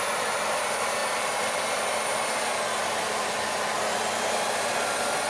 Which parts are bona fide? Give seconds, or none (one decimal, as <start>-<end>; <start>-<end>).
0.0-5.3